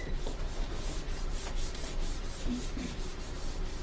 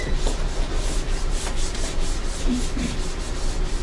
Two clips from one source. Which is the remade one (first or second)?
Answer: first